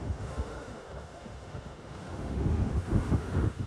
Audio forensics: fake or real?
fake